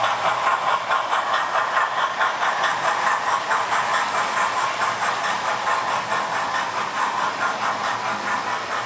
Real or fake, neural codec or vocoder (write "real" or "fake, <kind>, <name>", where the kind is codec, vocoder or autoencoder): real